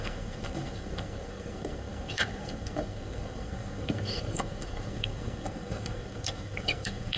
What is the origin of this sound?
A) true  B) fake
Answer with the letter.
B